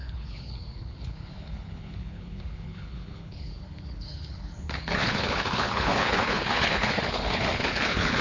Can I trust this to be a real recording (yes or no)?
no